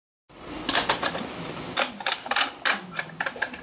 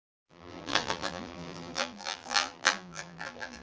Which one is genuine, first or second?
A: first